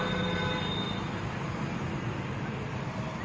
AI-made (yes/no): no